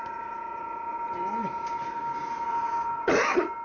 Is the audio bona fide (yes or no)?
yes